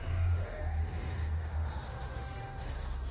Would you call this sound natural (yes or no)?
no